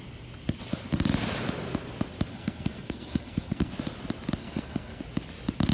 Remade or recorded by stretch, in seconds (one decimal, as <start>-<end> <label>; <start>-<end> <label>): 0.0-2.3 recorded; 2.3-3.7 remade; 3.7-4.4 recorded; 4.4-5.0 remade; 5.0-5.7 recorded